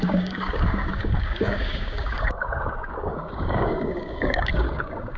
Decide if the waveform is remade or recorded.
remade